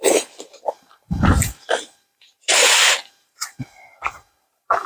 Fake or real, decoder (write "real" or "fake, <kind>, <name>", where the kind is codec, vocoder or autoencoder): fake, vocoder, BigVGAN v2